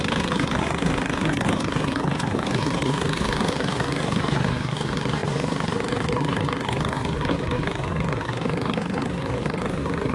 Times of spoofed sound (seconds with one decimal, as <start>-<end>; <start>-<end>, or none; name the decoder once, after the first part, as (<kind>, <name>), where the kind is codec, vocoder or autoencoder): 0.0-10.1 (codec, SNAC)